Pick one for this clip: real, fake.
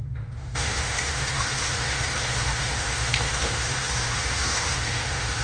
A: fake